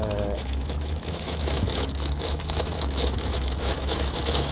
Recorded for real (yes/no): no